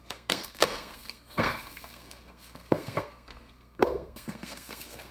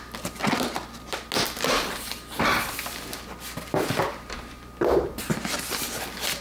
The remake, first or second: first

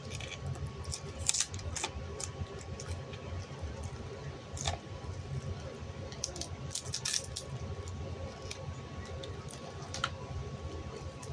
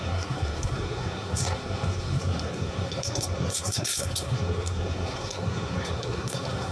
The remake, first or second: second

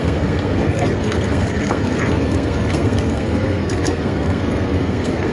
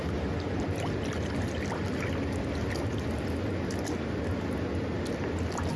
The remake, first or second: first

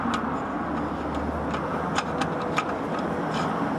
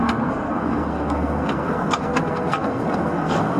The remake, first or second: second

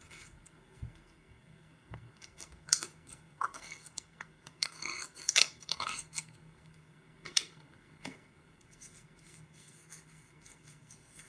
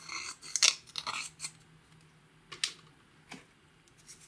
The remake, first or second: first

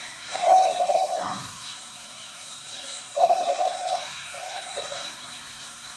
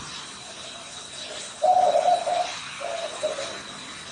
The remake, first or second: first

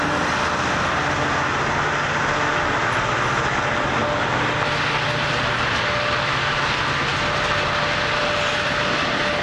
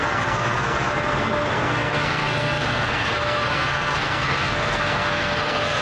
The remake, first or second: second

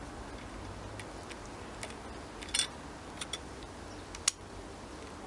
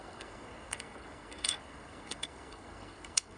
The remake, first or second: second